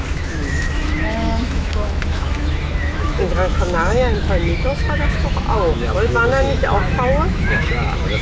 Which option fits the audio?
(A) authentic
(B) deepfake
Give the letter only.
B